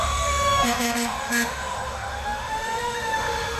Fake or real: fake